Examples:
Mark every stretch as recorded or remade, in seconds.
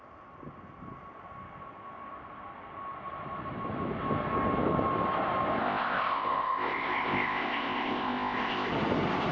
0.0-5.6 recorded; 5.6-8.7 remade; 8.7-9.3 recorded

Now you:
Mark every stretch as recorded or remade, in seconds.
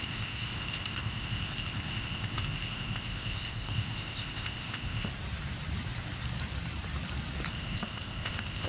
0.0-5.1 remade; 5.1-7.5 recorded; 7.5-8.7 remade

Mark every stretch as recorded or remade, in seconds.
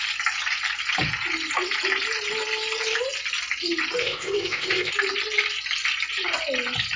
0.0-4.0 recorded; 4.0-4.9 remade; 4.9-7.0 recorded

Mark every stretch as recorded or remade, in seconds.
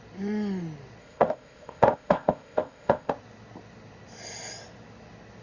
0.0-1.0 recorded; 1.0-3.1 remade; 3.1-5.4 recorded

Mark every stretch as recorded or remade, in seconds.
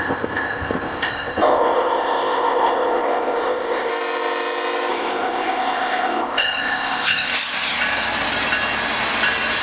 0.0-3.9 remade; 3.9-4.9 recorded; 4.9-7.3 remade; 7.3-9.6 recorded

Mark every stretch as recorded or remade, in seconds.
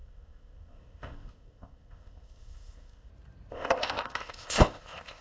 0.0-3.1 remade; 3.1-3.5 recorded; 3.5-5.2 remade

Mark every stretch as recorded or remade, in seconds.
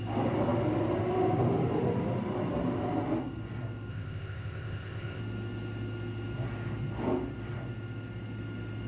0.0-3.9 recorded; 3.9-5.2 remade; 5.2-8.9 recorded